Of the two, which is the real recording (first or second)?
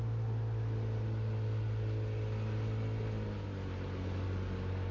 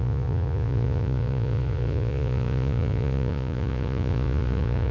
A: first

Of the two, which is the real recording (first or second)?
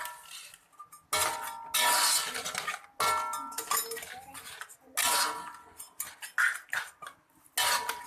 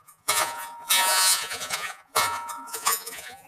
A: first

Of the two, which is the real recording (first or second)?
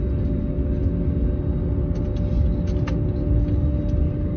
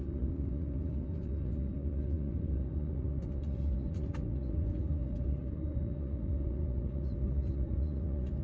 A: first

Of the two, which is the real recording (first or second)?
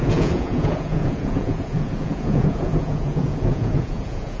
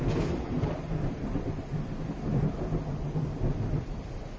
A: second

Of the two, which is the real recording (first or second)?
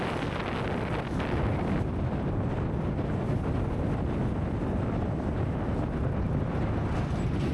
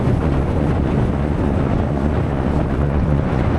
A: first